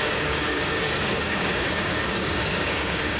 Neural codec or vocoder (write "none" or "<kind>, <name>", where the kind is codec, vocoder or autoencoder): codec, DAC